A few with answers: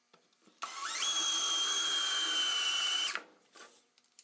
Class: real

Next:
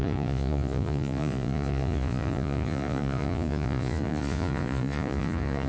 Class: fake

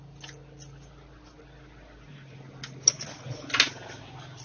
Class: real